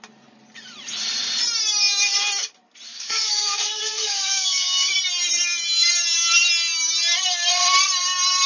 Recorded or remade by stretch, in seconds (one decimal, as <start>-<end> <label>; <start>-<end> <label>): 0.0-2.9 recorded; 2.9-4.9 remade; 4.9-8.5 recorded